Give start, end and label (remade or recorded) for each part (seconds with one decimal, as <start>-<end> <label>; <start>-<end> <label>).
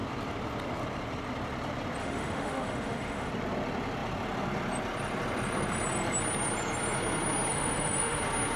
0.0-2.0 recorded; 2.0-3.3 remade; 3.3-7.5 recorded; 7.5-8.2 remade; 8.2-8.6 recorded